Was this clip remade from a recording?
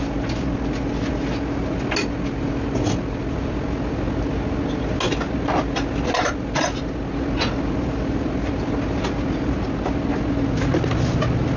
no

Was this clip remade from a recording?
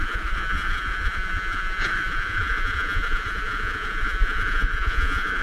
yes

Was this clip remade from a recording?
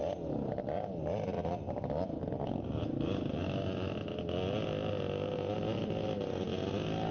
no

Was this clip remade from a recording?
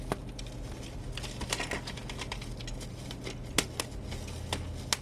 no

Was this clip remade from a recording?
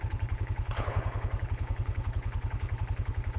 yes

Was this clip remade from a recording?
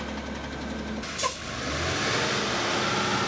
no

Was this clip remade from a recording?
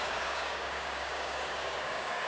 yes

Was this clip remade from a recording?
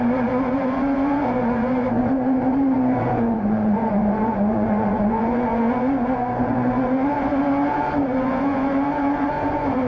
yes